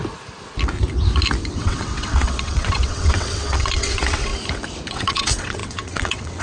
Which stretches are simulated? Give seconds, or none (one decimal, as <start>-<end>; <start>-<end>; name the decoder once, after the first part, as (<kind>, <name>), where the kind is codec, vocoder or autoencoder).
1.5-4.3 (vocoder, WaveNeXt); 4.9-6.4